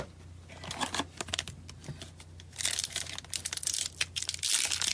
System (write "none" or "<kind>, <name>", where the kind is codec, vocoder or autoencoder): none